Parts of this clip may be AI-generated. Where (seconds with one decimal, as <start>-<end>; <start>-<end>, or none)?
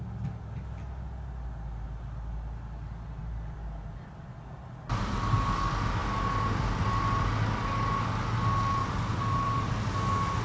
3.2-4.4; 8.8-9.7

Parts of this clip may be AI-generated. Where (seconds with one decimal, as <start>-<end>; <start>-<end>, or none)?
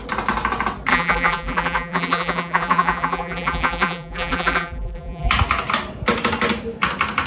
0.9-5.3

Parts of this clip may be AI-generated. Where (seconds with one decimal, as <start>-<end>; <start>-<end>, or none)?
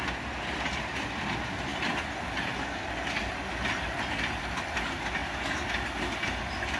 none